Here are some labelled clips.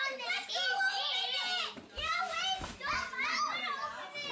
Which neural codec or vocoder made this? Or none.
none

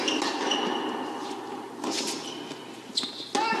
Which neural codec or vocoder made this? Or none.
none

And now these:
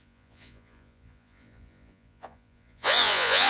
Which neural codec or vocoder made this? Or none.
vocoder, Vocos